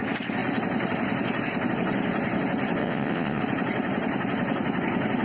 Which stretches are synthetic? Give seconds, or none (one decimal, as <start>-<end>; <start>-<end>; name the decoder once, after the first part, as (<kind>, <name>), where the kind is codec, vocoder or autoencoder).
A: 2.8-3.4 (vocoder, WaveNeXt)